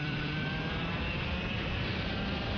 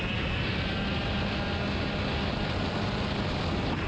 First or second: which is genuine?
second